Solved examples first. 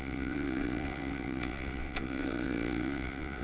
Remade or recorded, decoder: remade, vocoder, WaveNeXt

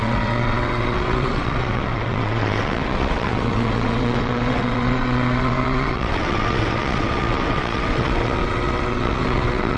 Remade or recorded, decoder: remade, vocoder, WaveNeXt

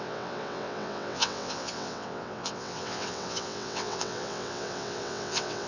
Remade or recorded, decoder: remade, vocoder, WaveNeXt